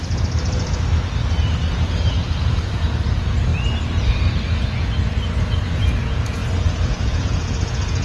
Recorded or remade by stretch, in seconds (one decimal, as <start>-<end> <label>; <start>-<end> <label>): 0.0-2.1 recorded; 2.1-3.5 remade; 3.5-6.0 recorded; 6.0-6.4 remade; 6.4-6.9 recorded; 6.9-8.0 remade